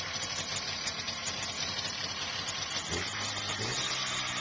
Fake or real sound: real